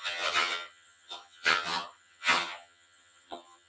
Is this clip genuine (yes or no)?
no